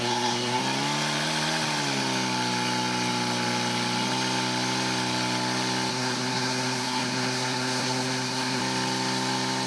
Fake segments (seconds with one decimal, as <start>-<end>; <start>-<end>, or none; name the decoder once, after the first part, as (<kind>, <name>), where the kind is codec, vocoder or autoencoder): 0.0-0.6 (codec, SNAC); 5.9-8.6